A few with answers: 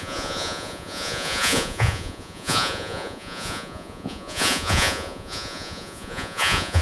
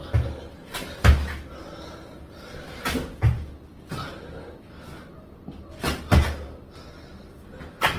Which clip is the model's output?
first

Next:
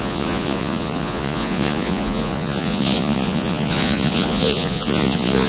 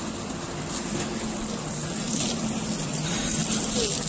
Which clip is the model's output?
first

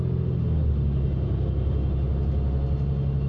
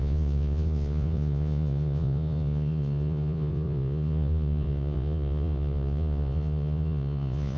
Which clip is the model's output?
second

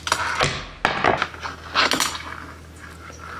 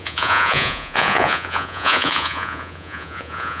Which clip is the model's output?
second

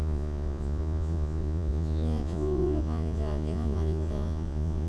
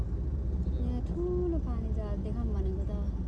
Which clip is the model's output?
first